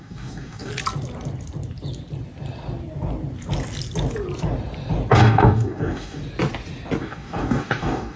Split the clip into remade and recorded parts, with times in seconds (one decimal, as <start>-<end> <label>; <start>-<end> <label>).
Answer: 0.0-0.7 remade; 0.7-5.1 recorded; 5.1-6.2 remade; 6.2-7.0 recorded; 7.0-8.2 remade